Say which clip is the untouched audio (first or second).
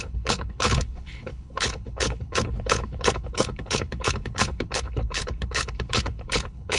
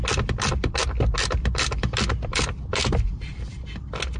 second